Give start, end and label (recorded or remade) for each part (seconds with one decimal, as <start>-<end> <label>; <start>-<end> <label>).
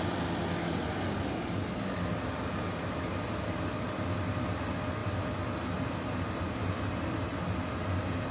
0.0-5.0 recorded; 5.0-6.8 remade; 6.8-8.3 recorded